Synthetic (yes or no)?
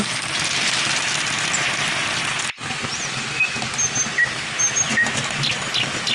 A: no